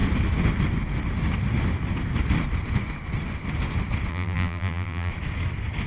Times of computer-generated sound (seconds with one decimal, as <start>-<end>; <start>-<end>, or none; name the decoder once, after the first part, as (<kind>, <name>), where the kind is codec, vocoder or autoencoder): 4.1-5.1 (vocoder, BigVGAN v2)